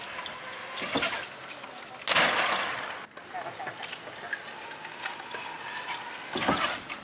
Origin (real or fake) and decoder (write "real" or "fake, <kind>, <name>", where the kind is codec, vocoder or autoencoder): real